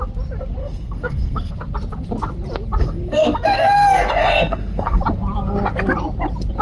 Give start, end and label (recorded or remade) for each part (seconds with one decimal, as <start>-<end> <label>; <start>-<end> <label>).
0.0-0.6 recorded; 0.6-1.5 remade; 1.5-2.8 recorded; 2.8-5.0 remade; 5.0-6.6 recorded

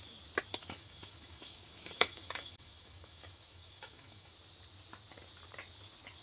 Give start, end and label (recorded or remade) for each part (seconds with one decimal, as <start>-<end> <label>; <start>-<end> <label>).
0.0-0.6 recorded; 0.6-4.3 remade; 4.3-6.2 recorded

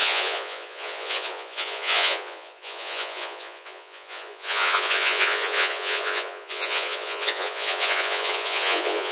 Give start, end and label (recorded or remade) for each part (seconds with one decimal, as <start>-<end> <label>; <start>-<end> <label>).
0.0-9.1 remade